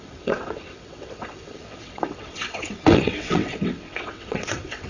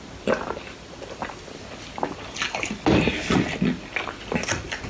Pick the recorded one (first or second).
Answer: second